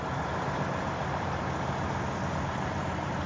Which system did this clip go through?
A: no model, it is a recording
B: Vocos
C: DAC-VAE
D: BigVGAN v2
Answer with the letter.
A